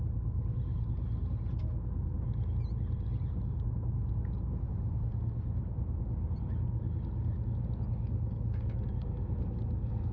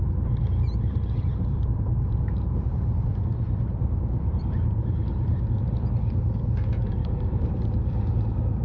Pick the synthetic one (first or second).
second